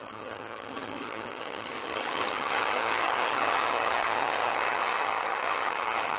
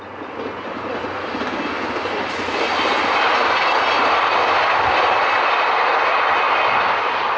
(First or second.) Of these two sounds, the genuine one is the second